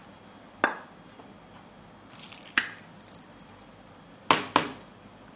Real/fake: real